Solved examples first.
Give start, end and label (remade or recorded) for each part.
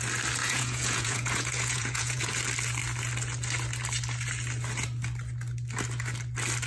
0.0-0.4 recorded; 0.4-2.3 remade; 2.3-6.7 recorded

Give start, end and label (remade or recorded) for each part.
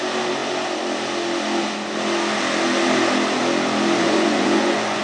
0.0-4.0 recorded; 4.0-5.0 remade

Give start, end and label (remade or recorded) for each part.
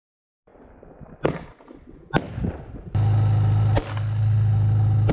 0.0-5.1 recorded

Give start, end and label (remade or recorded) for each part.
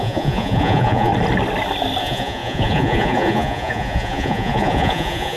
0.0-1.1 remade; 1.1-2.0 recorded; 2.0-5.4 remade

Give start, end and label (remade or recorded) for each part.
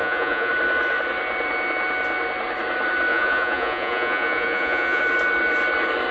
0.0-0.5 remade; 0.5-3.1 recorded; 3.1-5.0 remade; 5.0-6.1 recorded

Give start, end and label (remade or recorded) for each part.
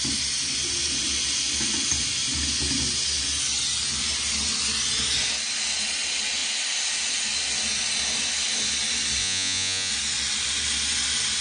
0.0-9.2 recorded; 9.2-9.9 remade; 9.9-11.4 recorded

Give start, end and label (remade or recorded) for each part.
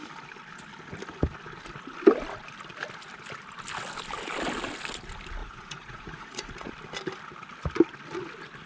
0.0-5.4 recorded; 5.4-6.7 remade; 6.7-8.7 recorded